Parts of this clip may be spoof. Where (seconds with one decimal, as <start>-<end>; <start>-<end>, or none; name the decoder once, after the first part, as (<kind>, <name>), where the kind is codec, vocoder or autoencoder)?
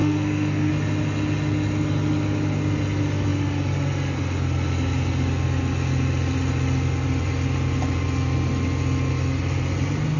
0.0-0.7 (codec, SNAC)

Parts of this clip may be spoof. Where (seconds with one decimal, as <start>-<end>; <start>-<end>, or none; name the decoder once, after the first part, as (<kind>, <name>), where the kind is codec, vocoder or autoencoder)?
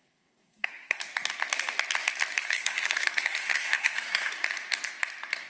0.0-1.0 (codec, SNAC); 2.4-4.3